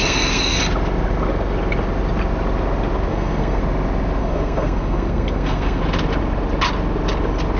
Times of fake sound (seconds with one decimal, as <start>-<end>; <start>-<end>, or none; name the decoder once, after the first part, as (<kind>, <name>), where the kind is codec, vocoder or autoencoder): 0.0-0.6 (codec, SNAC); 3.1-3.6; 4.2-5.8